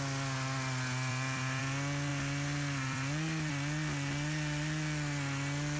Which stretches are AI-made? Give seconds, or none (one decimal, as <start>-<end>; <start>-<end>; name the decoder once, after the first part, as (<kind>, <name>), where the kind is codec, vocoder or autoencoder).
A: 1.1-1.6 (vocoder, BigVGAN v2); 2.1-3.5